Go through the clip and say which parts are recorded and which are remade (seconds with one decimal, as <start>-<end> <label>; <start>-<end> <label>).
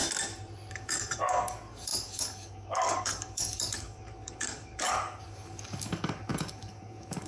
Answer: 0.0-0.7 recorded; 0.7-7.3 remade